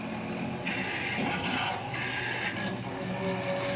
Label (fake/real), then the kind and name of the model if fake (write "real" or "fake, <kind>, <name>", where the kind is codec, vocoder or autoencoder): real